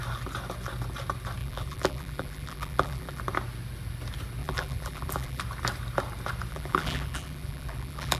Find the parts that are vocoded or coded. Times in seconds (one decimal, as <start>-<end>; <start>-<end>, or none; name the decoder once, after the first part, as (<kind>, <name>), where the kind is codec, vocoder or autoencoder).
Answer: 1.4-3.2 (vocoder, BigVGAN v2); 4.4-5.4; 6.5-8.2